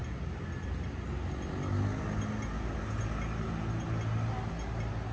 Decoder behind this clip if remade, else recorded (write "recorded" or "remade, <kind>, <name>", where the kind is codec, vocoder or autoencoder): recorded